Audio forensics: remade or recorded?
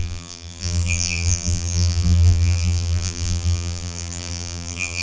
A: remade